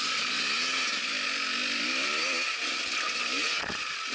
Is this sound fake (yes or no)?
no